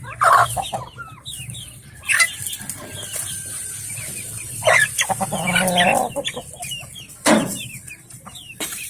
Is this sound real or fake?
fake